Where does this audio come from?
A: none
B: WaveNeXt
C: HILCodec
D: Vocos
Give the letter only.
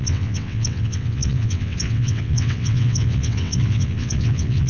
B